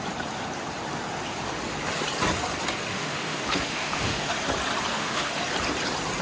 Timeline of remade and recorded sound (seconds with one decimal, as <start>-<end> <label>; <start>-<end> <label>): 0.0-2.9 recorded; 2.9-4.3 remade; 4.3-4.9 recorded; 4.9-5.4 remade; 5.4-6.2 recorded